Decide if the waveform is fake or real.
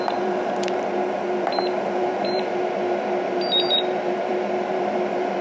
fake